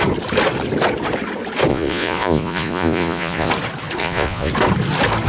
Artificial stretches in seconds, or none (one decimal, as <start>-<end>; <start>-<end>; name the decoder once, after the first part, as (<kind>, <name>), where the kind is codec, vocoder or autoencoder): 1.7-3.5 (vocoder, Vocos); 4.0-4.5